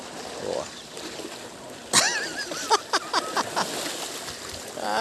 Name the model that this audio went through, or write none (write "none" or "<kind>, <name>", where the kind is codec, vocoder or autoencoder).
none